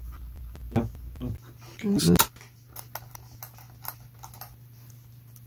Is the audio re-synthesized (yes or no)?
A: no